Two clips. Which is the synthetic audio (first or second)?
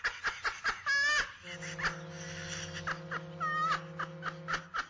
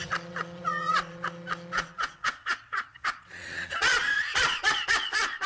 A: second